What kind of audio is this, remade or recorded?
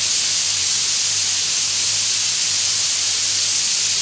recorded